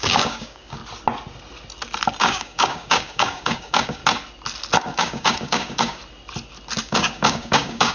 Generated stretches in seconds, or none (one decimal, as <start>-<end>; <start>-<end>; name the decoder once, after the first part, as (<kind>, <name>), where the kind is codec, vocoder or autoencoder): 0.0-0.8 (codec, DAC); 2.2-4.0; 4.8-6.0; 6.8-7.9